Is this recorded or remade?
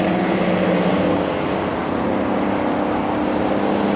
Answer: recorded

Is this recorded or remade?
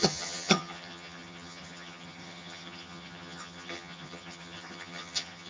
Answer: remade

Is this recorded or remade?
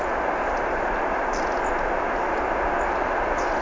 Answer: recorded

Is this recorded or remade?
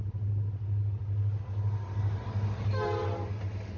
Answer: recorded